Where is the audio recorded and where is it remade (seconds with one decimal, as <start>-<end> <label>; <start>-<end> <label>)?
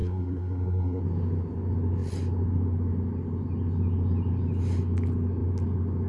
0.0-1.0 remade; 1.0-6.1 recorded